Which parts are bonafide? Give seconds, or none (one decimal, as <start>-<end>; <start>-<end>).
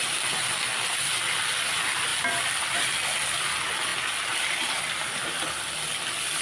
0.0-2.1; 3.3-3.9; 5.7-6.4